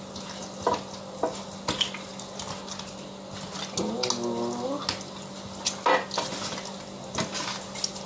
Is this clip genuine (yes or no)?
yes